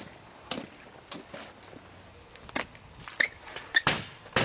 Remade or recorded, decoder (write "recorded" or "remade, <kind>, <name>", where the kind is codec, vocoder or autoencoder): recorded